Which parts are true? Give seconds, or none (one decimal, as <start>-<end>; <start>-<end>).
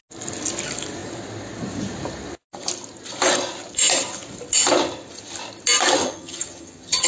0.0-6.0